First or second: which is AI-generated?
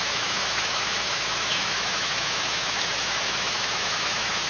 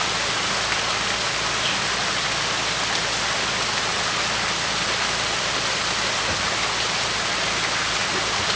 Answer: first